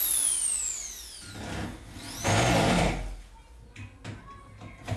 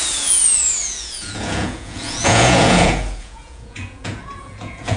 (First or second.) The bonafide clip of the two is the first